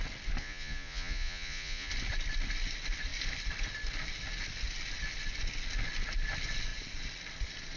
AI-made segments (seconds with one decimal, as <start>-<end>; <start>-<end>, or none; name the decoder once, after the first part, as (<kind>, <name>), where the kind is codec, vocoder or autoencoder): 0.4-1.9 (vocoder, Vocos)